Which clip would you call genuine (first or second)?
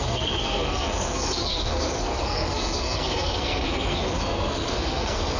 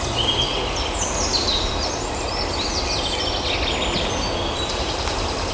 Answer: second